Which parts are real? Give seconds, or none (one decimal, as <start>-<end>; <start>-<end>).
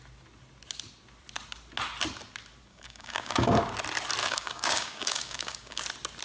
0.0-2.7; 3.6-4.2; 5.8-6.2